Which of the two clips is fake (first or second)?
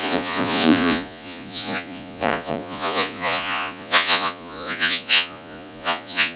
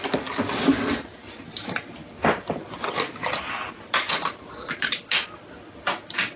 first